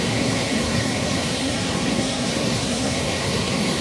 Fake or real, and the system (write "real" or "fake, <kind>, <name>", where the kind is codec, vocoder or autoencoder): fake, codec, SNAC